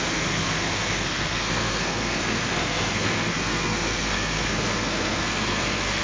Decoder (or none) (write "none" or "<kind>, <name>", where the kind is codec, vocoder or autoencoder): codec, SNAC